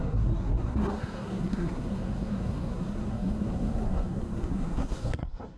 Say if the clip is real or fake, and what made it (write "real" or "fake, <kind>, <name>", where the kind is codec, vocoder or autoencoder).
fake, codec, SNAC